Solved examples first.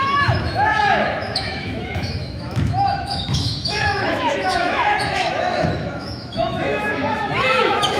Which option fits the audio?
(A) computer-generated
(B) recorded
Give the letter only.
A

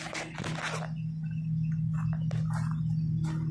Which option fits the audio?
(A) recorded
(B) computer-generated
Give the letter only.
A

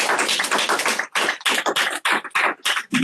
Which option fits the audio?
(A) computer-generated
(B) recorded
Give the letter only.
B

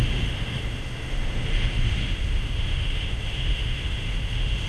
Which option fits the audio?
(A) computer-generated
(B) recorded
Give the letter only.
A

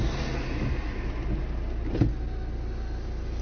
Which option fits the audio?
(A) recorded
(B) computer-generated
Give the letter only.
A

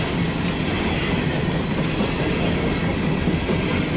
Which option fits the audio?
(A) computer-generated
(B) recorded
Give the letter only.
B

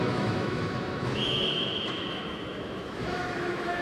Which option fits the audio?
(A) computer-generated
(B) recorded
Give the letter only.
A